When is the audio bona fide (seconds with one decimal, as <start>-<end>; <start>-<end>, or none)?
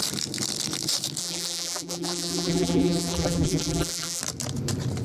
0.0-1.2; 4.2-5.0